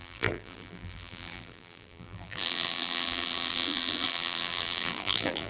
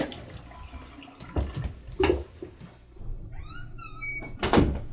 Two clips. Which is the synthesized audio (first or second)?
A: first